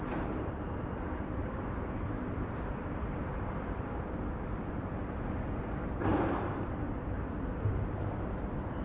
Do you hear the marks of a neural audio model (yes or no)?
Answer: yes